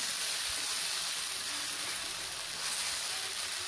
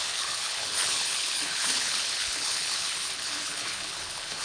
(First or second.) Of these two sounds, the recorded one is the first